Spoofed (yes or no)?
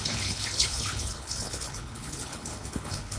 yes